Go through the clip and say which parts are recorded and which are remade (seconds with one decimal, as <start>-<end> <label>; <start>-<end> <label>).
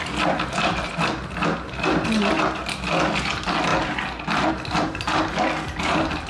0.0-6.3 recorded